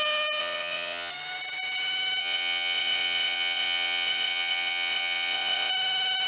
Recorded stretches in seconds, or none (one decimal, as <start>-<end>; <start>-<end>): 0.0-0.4; 1.1-2.2; 5.7-6.3